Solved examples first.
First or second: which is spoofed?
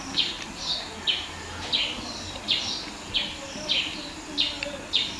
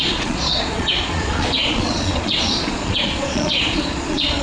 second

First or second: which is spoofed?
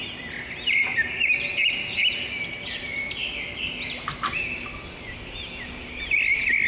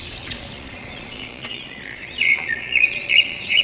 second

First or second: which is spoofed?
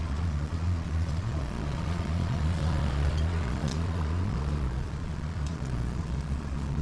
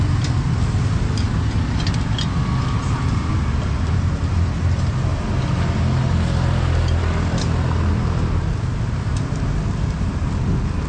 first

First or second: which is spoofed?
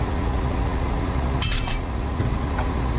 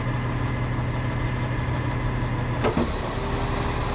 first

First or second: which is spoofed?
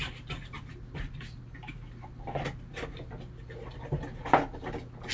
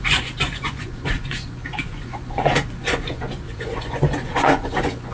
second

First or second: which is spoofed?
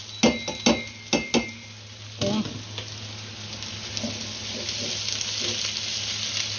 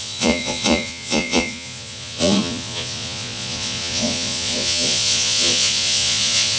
second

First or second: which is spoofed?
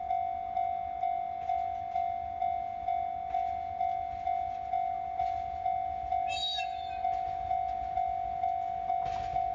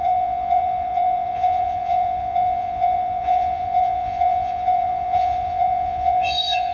second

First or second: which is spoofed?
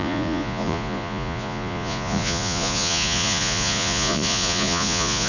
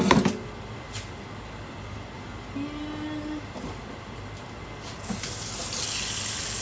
first